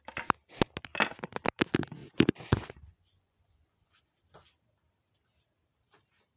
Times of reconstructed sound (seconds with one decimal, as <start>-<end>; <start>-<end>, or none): 2.0-4.0